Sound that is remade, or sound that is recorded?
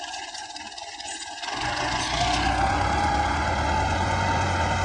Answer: remade